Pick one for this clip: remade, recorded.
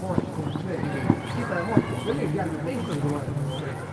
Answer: recorded